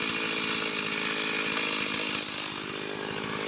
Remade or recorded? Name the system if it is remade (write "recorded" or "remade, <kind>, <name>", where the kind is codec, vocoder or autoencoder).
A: recorded